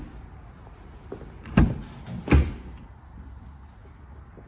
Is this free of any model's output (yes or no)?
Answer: yes